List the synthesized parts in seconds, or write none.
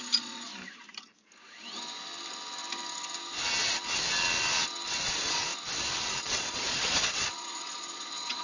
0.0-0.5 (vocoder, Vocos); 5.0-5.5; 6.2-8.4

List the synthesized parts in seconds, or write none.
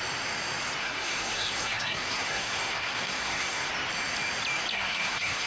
0.8-3.7 (codec, SNAC); 4.7-5.5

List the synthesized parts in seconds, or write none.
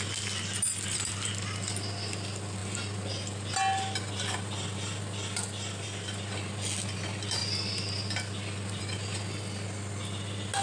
none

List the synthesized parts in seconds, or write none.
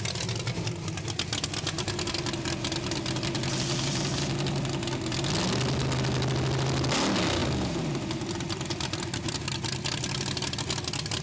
7.4-8.6 (vocoder, BigVGAN v2)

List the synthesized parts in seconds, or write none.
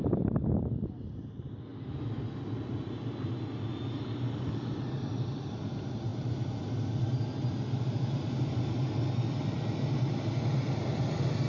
none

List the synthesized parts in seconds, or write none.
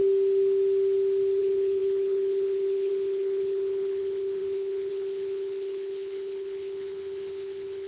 1.4-7.9 (codec, HILCodec)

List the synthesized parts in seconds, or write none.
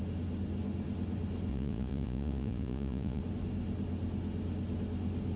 1.5-3.2 (vocoder, Vocos)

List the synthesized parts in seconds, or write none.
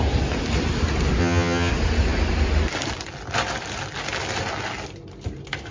1.2-1.7 (vocoder, HiFi-GAN)